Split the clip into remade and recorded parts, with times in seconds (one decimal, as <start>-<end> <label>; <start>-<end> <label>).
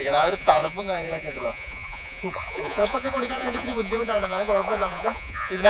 0.0-5.7 remade